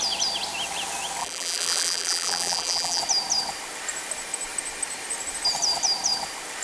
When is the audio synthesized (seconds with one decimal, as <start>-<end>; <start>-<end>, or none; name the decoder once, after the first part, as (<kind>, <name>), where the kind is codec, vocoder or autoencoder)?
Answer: 1.2-3.0 (vocoder, BigVGAN v2)